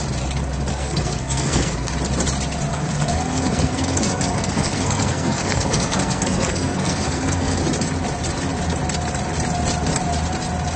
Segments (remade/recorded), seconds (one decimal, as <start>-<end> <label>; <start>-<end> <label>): 0.0-0.7 recorded; 0.7-1.9 remade; 1.9-2.7 recorded; 2.7-7.6 remade; 7.6-10.8 recorded